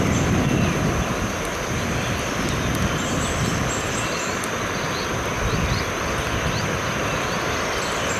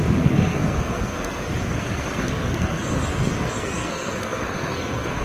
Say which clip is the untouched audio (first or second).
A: first